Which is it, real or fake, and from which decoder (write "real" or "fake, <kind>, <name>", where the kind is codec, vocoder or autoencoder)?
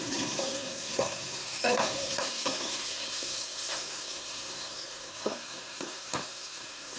fake, codec, SNAC